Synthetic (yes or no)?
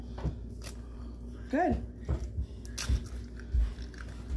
no